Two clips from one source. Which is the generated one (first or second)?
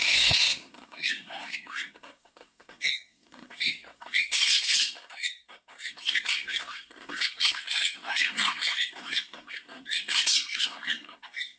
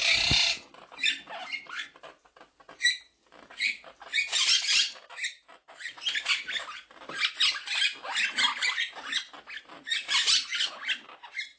first